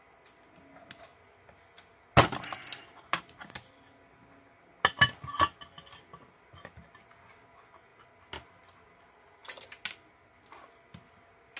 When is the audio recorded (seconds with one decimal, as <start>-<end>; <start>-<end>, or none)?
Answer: 0.0-11.6